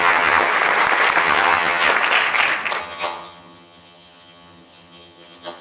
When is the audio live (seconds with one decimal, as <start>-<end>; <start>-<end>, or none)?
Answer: 0.5-1.2; 1.9-2.8